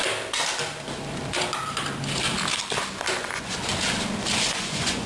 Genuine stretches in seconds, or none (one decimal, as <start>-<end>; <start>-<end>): 0.0-3.1; 3.7-4.4